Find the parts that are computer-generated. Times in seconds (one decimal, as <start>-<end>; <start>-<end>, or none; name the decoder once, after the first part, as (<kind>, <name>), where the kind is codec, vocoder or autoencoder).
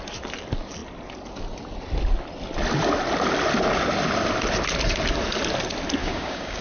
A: 6.0-6.6 (codec, DAC)